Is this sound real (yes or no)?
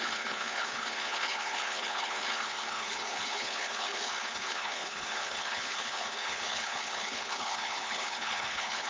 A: no